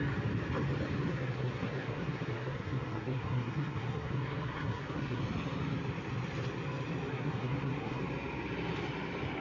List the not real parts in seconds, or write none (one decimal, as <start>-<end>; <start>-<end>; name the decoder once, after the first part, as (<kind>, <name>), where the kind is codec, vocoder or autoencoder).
1.1-5.2 (codec, SNAC); 7.1-8.0